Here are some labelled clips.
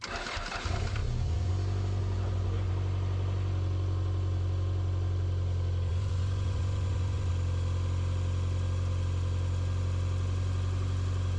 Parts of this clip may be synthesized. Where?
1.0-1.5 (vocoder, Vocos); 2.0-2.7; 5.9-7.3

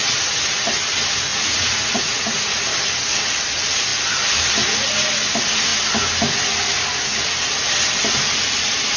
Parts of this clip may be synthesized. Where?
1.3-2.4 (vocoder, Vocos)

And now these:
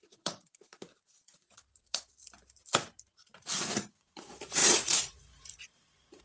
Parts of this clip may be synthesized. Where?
0.0-2.1 (vocoder, Vocos); 3.1-6.2

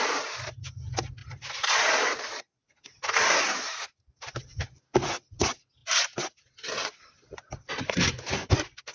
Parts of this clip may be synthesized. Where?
none

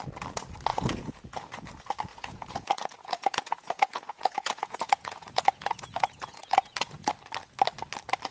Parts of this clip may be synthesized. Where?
0.7-1.4 (vocoder, Vocos); 2.1-7.1

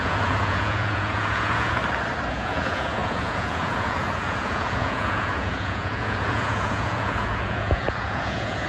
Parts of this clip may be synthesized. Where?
0.0-1.8 (vocoder, Vocos); 2.3-8.7

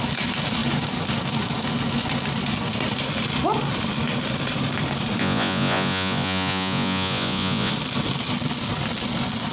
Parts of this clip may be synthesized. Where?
5.2-7.7 (vocoder, Vocos)

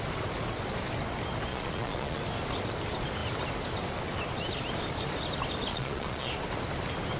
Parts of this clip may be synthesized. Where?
1.5-2.2 (vocoder, Vocos); 5.7-6.3